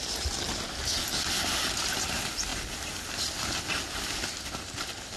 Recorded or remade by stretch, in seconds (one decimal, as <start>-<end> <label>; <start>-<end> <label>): 0.0-5.2 recorded